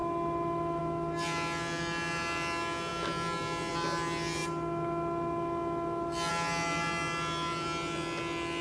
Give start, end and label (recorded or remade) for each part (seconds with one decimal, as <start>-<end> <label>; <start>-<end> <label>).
0.0-8.6 recorded

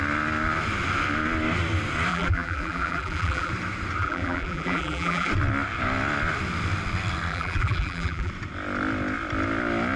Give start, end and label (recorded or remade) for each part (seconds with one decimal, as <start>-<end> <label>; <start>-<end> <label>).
0.0-2.1 recorded; 2.1-3.5 remade; 3.5-4.0 recorded; 4.0-5.3 remade; 5.3-7.3 recorded; 7.3-8.3 remade; 8.3-10.0 recorded

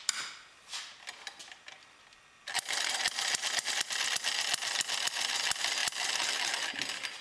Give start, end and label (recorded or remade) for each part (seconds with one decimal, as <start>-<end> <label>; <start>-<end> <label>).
0.0-1.4 recorded; 1.4-2.6 remade; 2.6-5.8 recorded; 5.8-7.2 remade

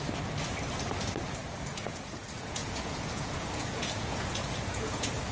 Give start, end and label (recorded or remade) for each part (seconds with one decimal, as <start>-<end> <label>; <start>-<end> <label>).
0.0-1.7 recorded; 1.7-5.3 remade

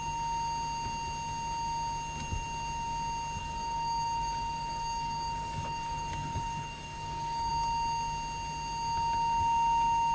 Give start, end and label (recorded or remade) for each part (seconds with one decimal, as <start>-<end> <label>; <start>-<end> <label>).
0.0-3.4 recorded; 3.4-7.5 remade; 7.5-10.1 recorded

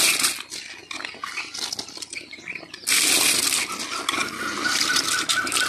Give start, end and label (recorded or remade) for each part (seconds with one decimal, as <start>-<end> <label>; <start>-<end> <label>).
0.0-5.7 recorded